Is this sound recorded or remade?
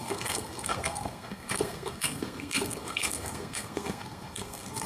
remade